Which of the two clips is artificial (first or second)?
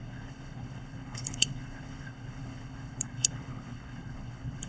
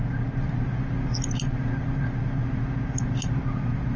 first